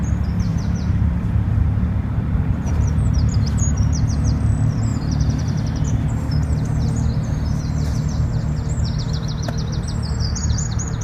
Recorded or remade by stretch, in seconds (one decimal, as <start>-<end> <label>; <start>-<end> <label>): 0.0-0.5 recorded; 0.5-4.0 remade; 4.0-4.9 recorded; 4.9-6.1 remade; 6.1-11.0 recorded